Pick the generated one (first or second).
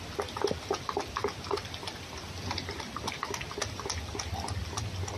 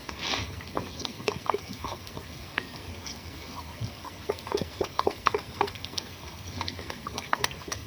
second